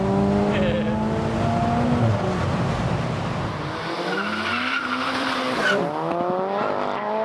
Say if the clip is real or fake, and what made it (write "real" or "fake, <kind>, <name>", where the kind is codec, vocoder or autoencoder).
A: real